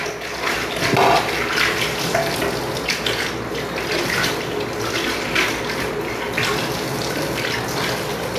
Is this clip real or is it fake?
real